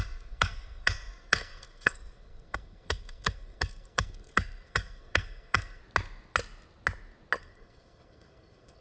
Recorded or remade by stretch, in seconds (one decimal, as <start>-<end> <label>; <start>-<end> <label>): 0.0-5.8 remade; 5.8-7.4 recorded; 7.4-8.8 remade